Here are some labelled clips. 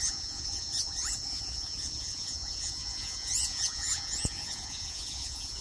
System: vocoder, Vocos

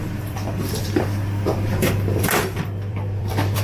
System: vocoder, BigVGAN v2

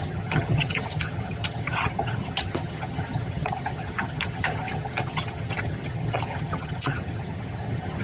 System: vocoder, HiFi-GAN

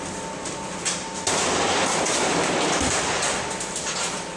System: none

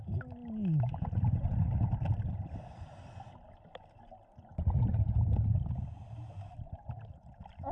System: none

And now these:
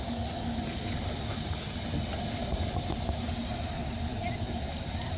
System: none